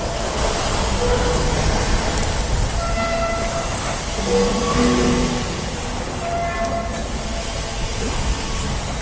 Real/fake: real